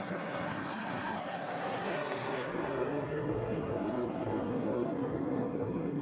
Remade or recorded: remade